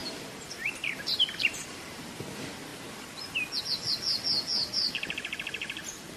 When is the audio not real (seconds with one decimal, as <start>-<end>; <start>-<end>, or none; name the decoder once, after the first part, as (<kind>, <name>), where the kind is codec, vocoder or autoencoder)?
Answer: 0.0-2.1 (vocoder, BigVGAN v2); 4.5-6.2